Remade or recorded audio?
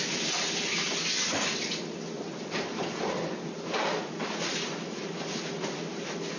recorded